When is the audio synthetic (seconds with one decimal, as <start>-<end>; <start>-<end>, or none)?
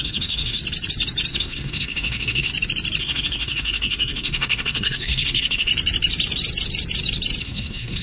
0.0-0.6; 1.3-2.5; 3.0-5.7; 7.4-8.0